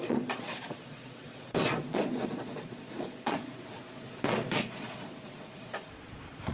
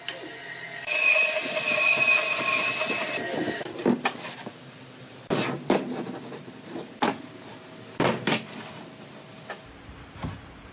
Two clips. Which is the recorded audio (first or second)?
second